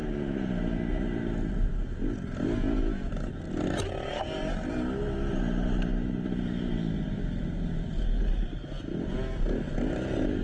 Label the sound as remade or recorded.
recorded